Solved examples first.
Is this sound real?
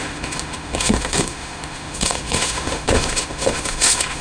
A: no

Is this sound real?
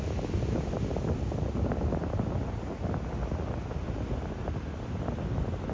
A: yes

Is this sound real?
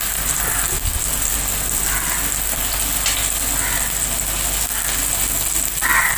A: yes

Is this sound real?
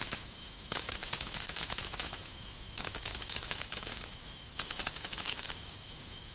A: no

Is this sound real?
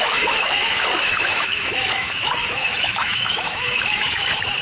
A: no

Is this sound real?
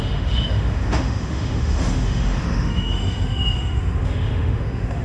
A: no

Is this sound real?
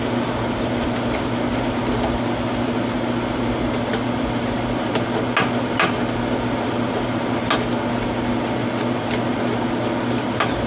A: yes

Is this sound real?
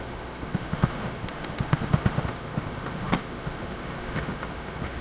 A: no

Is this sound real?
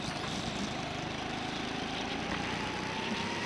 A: yes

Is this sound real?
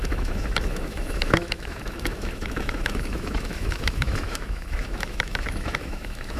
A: no